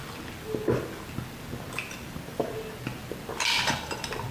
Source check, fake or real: real